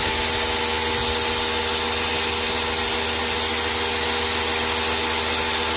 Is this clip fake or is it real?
real